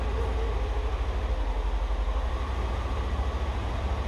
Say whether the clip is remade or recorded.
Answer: recorded